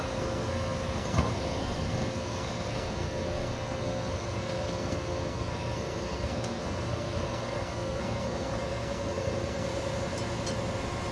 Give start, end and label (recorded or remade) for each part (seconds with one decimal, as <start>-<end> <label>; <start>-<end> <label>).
0.0-9.7 remade; 9.7-11.1 recorded